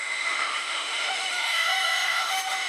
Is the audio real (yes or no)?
no